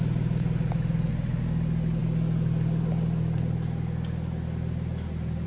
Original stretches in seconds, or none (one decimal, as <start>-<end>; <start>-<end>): 0.0-5.5